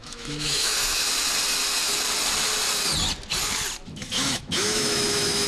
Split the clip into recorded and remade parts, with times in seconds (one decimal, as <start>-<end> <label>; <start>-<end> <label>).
0.0-1.0 remade; 1.0-3.9 recorded; 3.9-5.5 remade